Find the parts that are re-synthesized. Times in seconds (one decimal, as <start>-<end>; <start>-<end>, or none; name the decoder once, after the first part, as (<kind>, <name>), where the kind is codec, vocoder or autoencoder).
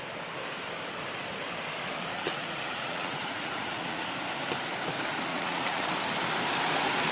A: 2.1-4.1 (vocoder, Vocos); 5.3-5.9